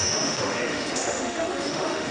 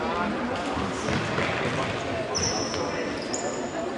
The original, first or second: second